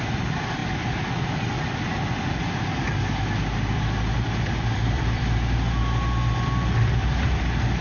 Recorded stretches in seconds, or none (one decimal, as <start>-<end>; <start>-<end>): 0.6-4.4; 5.8-7.8